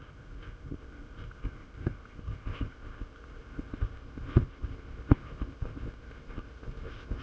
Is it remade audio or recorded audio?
remade